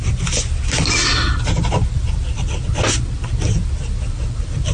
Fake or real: real